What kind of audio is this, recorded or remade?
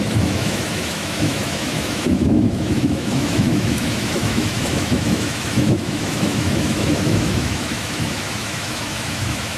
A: remade